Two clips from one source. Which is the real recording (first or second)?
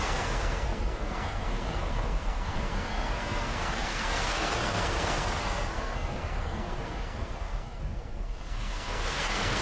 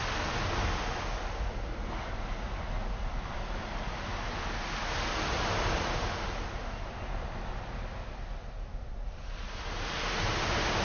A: second